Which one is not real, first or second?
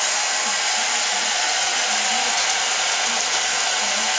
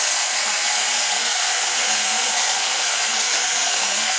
second